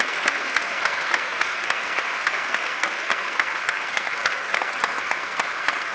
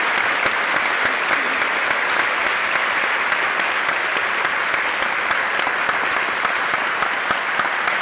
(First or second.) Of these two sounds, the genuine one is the second